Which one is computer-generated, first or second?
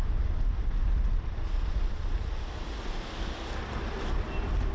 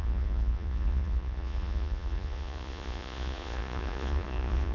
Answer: second